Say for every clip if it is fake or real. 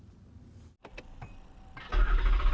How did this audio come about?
real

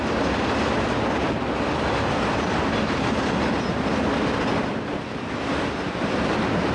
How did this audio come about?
real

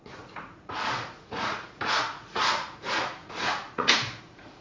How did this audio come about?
fake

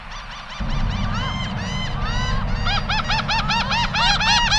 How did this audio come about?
real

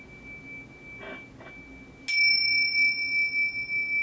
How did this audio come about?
real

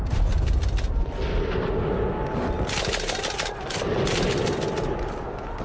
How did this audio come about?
real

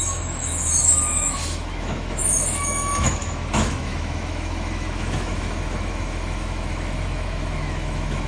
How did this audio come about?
fake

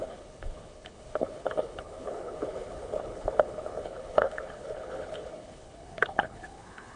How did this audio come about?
fake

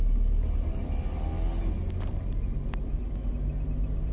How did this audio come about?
real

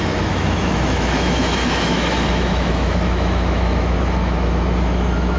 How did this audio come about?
fake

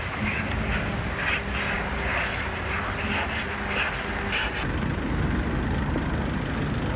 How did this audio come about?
real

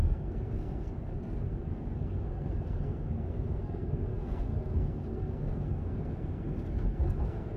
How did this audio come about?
fake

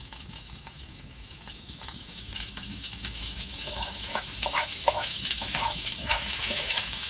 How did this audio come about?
fake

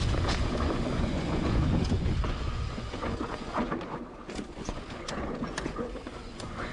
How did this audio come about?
fake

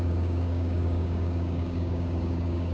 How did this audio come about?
fake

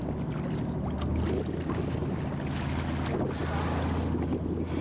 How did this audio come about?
real